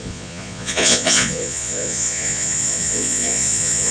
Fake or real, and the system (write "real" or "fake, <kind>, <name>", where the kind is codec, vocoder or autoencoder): fake, vocoder, Vocos